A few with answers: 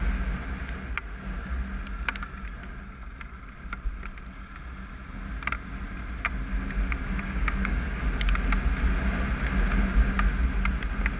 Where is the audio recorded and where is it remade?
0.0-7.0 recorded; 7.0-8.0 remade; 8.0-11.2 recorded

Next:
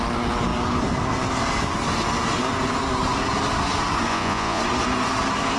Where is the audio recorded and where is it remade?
0.0-4.1 recorded; 4.1-4.6 remade; 4.6-5.6 recorded

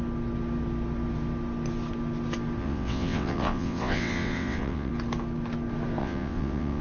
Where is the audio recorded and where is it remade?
0.0-2.6 recorded; 2.6-4.9 remade; 4.9-6.0 recorded; 6.0-6.8 remade

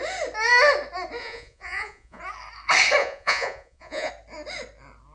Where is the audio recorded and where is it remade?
0.0-1.2 recorded; 1.2-2.2 remade; 2.2-3.0 recorded; 3.0-4.1 remade; 4.1-5.1 recorded

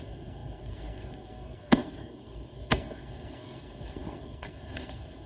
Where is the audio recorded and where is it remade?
0.0-5.3 remade

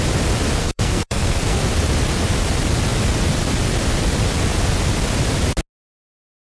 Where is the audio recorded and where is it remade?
0.0-0.6 recorded; 0.6-1.7 remade; 1.7-6.6 recorded